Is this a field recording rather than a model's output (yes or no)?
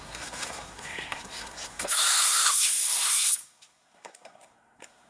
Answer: no